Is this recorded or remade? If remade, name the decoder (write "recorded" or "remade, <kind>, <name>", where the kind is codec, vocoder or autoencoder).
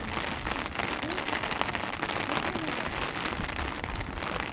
recorded